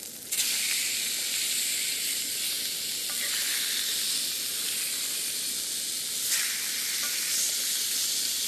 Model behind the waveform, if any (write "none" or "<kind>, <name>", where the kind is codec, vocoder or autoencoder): none